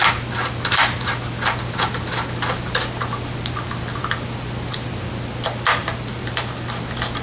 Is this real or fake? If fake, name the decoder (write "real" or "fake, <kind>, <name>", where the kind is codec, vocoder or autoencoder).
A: real